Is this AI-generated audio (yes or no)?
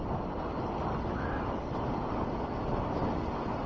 no